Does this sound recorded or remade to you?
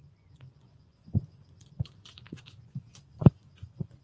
remade